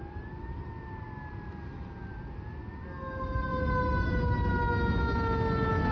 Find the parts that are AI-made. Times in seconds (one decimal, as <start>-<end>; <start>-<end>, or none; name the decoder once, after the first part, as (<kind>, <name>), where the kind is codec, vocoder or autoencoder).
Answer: none